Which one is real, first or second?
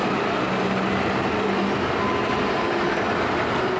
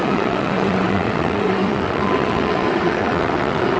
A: first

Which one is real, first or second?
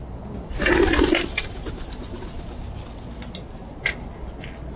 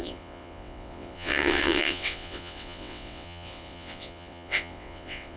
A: first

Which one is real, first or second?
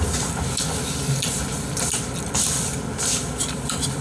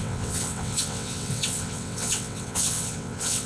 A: first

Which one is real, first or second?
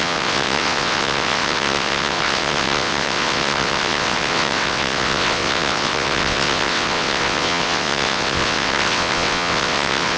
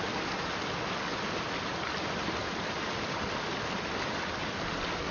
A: second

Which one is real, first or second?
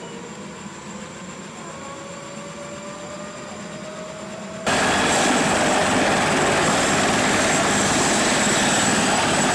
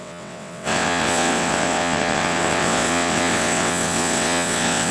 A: first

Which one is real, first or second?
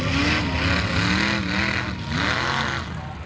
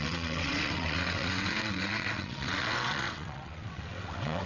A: first